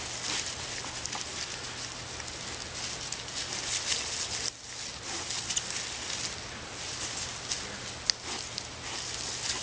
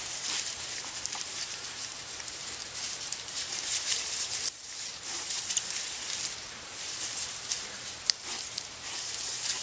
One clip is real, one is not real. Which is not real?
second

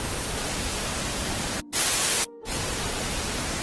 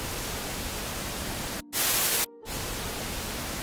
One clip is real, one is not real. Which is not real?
first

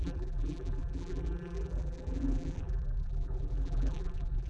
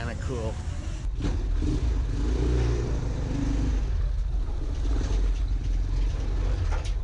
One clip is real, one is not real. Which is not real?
first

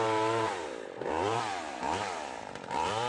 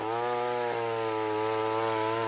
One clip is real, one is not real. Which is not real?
first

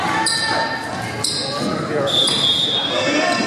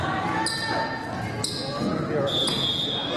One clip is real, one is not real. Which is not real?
first